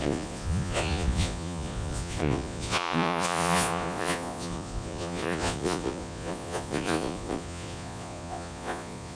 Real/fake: fake